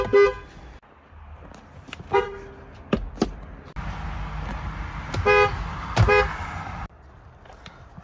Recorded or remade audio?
recorded